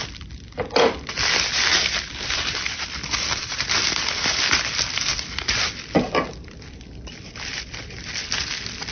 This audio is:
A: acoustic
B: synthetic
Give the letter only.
B